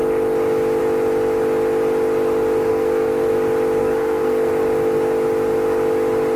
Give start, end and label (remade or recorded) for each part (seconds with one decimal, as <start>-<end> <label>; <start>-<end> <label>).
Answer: 0.0-2.7 recorded; 2.7-3.3 remade; 3.3-3.8 recorded; 3.8-4.5 remade; 4.5-6.4 recorded